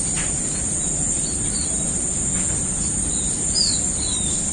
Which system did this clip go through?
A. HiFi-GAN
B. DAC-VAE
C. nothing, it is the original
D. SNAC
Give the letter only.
C